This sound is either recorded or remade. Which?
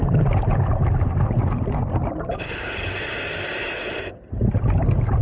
recorded